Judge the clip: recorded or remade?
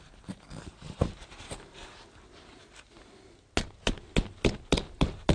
recorded